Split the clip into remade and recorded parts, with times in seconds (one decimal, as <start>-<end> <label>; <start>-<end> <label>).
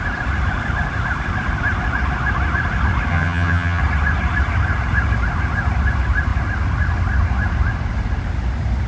0.0-3.1 recorded; 3.1-3.8 remade; 3.8-8.9 recorded